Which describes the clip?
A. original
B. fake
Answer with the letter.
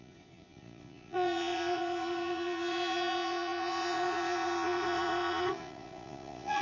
B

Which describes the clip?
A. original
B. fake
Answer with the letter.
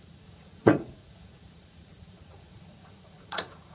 B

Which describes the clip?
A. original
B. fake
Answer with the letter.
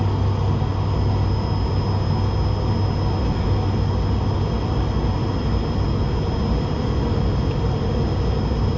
A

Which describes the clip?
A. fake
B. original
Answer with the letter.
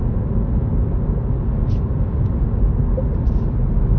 B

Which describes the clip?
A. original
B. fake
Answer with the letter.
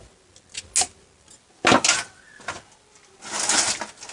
A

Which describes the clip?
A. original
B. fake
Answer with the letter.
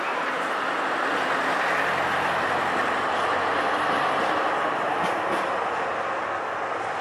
A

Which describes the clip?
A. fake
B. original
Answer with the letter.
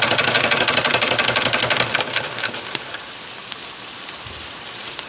B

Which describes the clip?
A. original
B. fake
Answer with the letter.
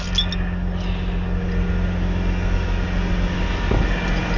A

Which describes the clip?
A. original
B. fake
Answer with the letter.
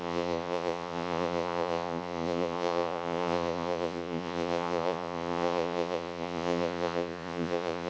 B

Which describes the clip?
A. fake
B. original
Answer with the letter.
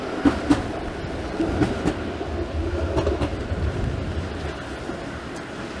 B